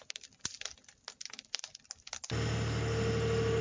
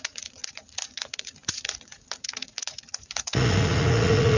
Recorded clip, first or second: first